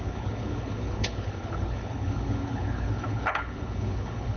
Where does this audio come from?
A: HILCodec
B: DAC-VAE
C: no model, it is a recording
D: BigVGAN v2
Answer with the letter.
A